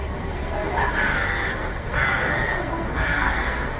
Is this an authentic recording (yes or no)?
no